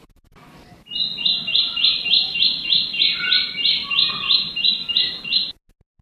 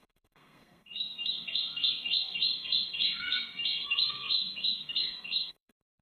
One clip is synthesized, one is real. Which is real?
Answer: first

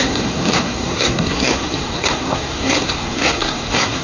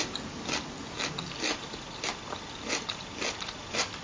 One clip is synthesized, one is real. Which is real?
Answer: second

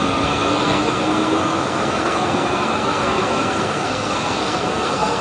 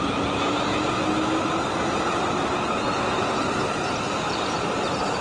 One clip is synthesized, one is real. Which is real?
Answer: second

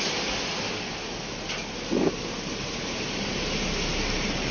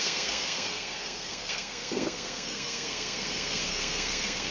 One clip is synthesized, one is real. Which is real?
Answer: first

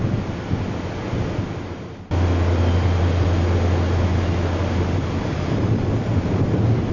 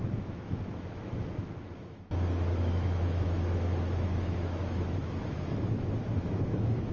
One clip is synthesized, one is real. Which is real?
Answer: first